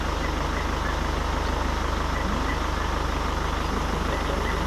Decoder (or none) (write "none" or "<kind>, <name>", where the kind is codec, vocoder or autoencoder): none